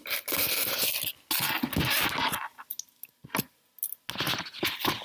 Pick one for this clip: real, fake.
real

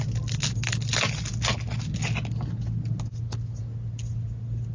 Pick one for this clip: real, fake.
real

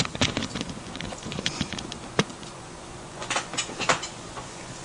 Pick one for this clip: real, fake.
fake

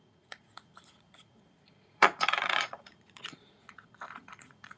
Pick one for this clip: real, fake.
fake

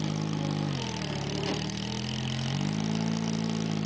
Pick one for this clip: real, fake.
real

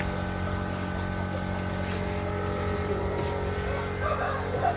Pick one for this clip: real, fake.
real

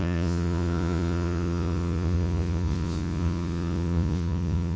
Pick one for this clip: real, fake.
fake